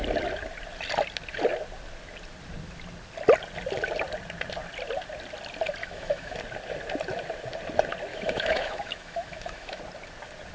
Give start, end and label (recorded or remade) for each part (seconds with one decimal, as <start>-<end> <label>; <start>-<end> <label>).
0.0-5.8 recorded; 5.8-6.4 remade; 6.4-8.1 recorded; 8.1-9.8 remade; 9.8-10.5 recorded